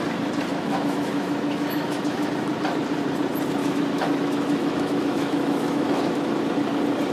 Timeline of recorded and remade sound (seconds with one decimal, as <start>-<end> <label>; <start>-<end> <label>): 0.0-0.5 recorded; 0.5-2.3 remade; 2.3-3.6 recorded; 3.6-6.3 remade; 6.3-7.1 recorded